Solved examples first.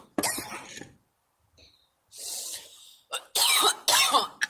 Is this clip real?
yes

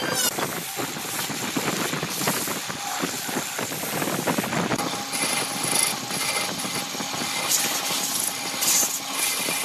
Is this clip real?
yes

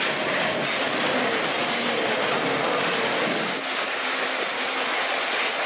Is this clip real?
yes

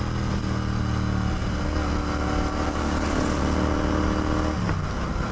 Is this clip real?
yes